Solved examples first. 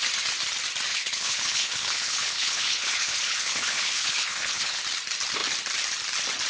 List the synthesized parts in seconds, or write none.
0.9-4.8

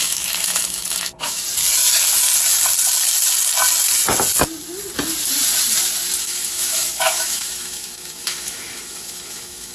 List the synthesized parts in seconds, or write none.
0.0-1.4; 6.2-9.7

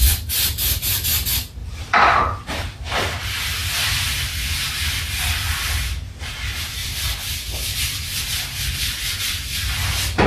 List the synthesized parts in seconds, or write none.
1.6-2.4; 6.8-7.4

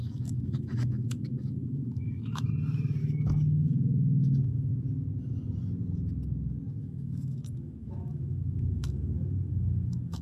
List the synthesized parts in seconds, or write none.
0.0-2.5; 3.0-4.7; 6.8-10.2

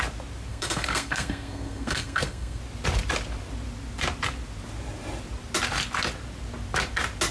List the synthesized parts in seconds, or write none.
0.5-2.6